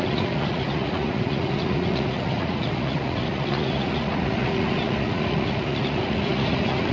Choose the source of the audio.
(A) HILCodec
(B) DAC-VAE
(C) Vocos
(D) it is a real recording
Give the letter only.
C